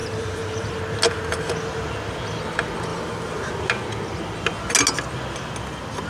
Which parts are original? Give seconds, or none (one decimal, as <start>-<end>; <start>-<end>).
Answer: 0.8-2.9; 3.5-6.1